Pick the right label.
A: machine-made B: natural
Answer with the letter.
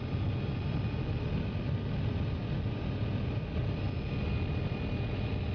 B